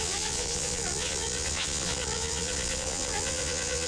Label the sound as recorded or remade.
remade